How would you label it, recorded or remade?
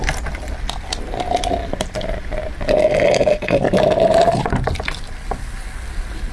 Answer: recorded